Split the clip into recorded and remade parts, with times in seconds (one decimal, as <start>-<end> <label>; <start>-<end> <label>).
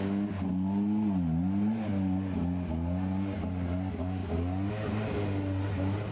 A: 0.0-6.1 recorded